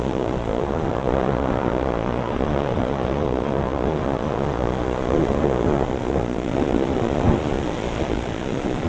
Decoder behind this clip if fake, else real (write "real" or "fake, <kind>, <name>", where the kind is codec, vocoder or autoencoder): fake, vocoder, Vocos